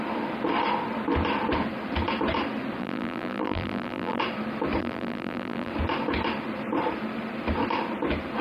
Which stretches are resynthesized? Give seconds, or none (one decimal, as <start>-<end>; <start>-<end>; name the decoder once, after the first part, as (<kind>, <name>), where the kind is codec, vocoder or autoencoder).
2.8-4.2 (vocoder, BigVGAN v2); 4.8-5.7